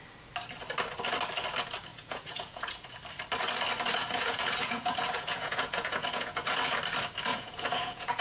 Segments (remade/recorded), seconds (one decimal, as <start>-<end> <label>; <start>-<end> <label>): 0.0-1.9 recorded; 1.9-2.9 remade; 2.9-3.9 recorded; 3.9-6.8 remade; 6.8-7.3 recorded; 7.3-8.2 remade